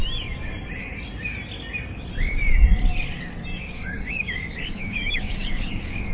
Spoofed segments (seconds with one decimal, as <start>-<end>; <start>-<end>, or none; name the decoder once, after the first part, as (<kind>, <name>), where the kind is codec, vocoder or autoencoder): 3.5-6.1 (codec, DAC)